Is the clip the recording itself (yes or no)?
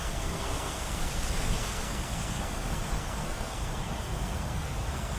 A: no